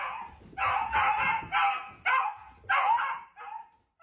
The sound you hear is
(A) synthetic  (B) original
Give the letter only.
B